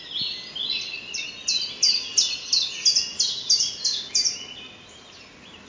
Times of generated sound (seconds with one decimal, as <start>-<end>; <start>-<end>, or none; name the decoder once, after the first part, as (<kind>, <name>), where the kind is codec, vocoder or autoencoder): none

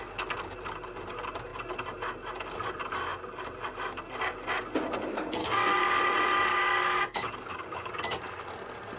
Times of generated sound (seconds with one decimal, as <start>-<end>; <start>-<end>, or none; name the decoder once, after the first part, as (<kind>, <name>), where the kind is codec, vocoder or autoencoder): 5.4-6.0 (codec, DAC); 6.5-7.9

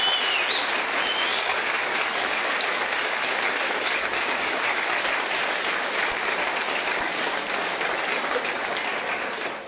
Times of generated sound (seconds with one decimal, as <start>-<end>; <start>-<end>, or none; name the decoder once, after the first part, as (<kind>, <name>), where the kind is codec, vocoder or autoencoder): 1.3-5.0 (codec, DAC)

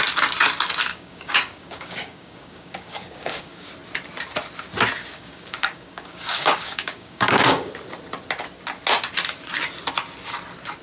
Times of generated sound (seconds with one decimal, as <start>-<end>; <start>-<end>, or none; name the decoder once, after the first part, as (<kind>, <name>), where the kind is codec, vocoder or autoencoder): 0.9-3.7 (codec, DAC); 5.0-7.7

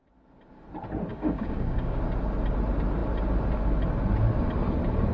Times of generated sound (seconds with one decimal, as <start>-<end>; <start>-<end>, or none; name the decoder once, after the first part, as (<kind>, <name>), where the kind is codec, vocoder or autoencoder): 1.1-2.0 (codec, DAC)